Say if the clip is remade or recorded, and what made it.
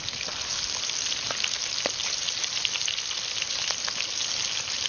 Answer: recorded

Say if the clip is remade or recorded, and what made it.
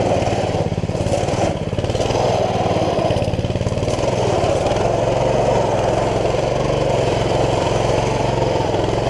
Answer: remade, vocoder, BigVGAN v2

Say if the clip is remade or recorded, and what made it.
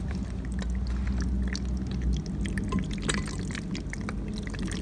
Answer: recorded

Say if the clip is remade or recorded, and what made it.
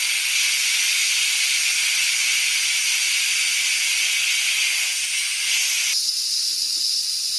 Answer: recorded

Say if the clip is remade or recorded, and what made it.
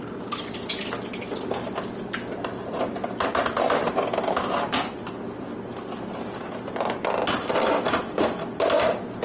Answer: recorded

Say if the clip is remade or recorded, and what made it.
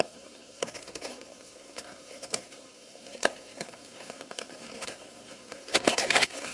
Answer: remade, codec, SNAC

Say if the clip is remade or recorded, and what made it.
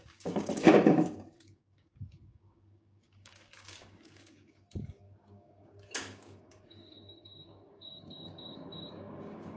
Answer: remade, codec, DAC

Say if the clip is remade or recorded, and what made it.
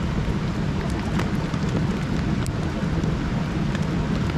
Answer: recorded